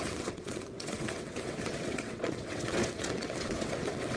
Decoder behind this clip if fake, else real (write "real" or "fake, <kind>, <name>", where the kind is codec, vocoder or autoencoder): fake, vocoder, WaveNeXt